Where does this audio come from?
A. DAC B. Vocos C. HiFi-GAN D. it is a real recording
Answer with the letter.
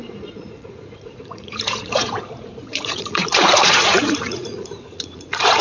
B